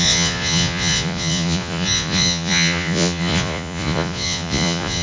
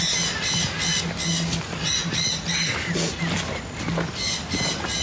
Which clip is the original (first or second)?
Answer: second